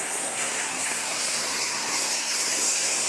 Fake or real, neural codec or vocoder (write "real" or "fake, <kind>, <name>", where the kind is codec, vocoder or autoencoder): fake, codec, SNAC